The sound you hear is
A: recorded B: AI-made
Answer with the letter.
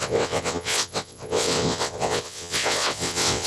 B